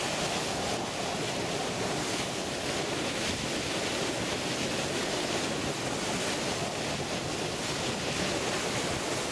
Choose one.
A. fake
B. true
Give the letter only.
B